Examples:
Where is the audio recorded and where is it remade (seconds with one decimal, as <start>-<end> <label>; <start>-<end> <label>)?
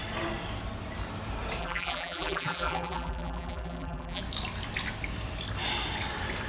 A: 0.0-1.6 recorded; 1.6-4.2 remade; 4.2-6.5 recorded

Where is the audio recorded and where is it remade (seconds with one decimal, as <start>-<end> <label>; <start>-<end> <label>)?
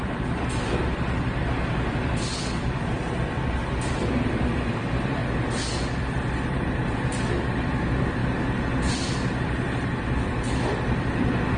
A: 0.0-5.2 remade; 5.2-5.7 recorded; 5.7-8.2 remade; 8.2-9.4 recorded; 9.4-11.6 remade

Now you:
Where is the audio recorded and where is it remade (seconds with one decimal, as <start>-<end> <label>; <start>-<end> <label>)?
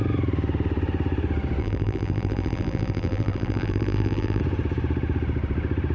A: 0.0-1.6 recorded; 1.6-4.4 remade; 4.4-5.9 recorded